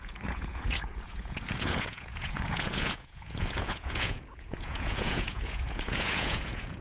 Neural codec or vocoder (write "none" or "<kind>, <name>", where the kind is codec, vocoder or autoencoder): vocoder, Vocos